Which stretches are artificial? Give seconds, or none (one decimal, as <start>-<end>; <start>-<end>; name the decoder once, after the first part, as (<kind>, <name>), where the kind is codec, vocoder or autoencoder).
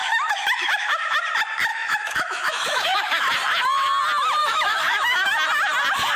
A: 0.0-1.2 (autoencoder, DAC-VAE); 1.7-3.3; 4.4-5.3